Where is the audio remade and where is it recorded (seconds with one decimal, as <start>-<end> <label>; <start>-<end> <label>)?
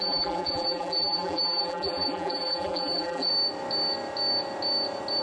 0.0-3.3 remade; 3.3-5.2 recorded